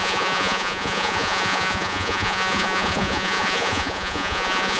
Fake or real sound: fake